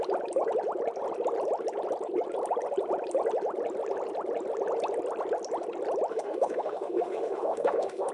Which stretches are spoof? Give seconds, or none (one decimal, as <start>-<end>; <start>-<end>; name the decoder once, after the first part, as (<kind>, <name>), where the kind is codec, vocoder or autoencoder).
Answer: 6.1-8.1 (autoencoder, DAC-VAE)